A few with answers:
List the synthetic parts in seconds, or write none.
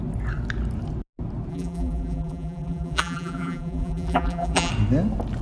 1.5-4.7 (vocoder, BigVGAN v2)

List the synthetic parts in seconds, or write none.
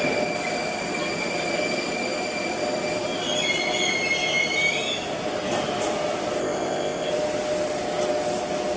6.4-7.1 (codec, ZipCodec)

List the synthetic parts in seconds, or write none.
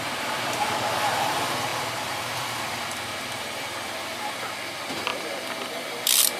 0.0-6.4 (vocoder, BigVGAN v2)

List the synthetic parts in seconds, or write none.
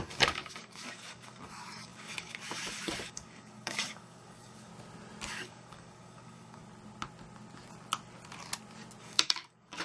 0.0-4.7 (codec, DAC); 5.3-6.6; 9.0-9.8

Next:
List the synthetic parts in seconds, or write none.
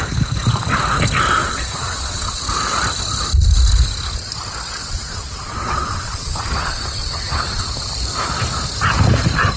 1.4-2.4 (vocoder, WaveNeXt); 4.8-7.7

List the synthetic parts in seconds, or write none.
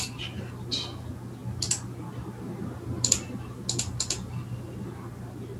none